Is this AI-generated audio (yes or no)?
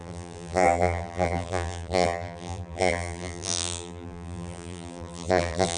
yes